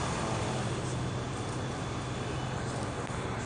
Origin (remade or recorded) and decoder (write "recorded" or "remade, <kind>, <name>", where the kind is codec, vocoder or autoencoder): recorded